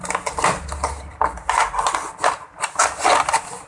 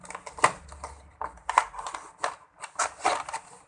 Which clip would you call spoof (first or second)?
second